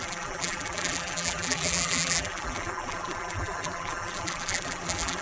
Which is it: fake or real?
fake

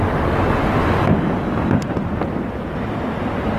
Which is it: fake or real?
real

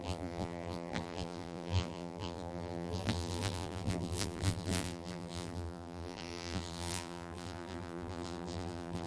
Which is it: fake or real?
fake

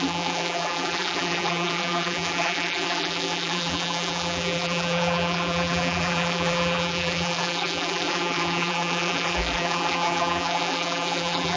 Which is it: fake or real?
fake